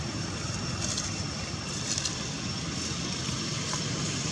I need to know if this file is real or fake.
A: fake